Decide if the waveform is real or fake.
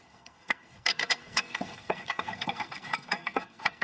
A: fake